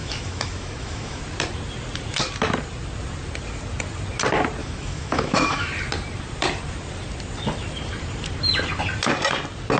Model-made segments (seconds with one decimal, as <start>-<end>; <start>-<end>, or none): 0.0-1.2; 4.6-5.7